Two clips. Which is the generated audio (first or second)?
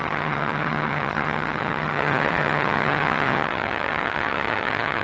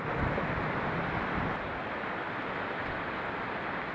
first